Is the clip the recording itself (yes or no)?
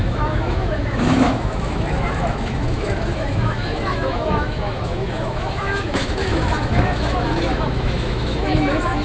no